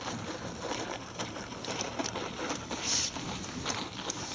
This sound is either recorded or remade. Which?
recorded